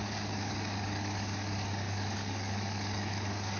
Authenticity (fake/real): fake